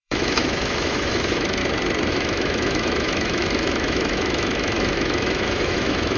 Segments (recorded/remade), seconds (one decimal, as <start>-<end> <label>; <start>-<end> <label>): 0.0-1.6 remade; 1.6-2.1 recorded; 2.1-6.2 remade